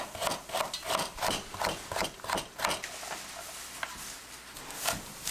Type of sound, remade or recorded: recorded